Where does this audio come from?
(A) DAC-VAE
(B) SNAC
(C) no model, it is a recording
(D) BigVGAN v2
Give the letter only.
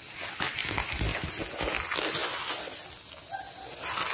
C